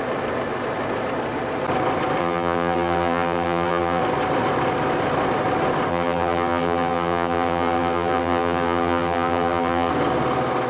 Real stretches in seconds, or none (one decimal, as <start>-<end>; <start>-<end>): 0.0-2.2; 4.0-5.9; 9.9-10.7